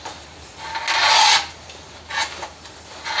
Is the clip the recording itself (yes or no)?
yes